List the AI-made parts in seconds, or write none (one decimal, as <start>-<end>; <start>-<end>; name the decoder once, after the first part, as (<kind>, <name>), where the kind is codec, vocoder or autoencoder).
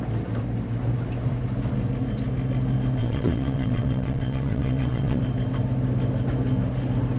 3.0-5.2 (vocoder, WaveNeXt)